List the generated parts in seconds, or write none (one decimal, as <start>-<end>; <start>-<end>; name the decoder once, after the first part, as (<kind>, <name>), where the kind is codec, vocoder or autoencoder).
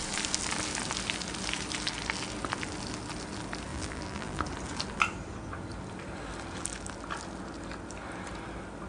3.7-4.4 (vocoder, BigVGAN v2)